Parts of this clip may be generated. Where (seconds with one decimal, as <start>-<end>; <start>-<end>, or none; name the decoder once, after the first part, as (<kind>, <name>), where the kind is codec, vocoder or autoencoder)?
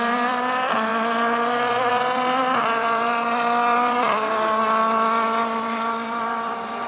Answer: 0.0-6.9 (vocoder, BigVGAN v2)